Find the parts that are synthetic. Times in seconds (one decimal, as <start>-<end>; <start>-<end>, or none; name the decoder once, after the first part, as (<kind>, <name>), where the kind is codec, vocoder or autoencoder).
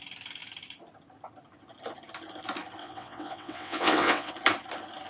2.8-4.3 (vocoder, WaveNeXt)